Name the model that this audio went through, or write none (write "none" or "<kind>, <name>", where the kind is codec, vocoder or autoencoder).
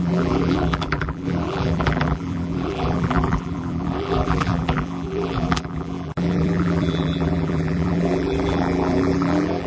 vocoder, BigVGAN v2